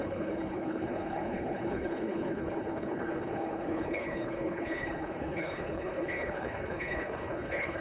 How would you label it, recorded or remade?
remade